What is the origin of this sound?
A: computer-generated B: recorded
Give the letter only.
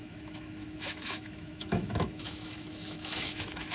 A